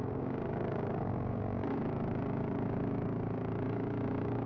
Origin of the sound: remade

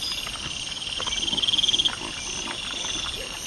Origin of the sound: recorded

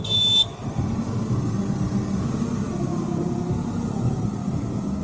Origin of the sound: recorded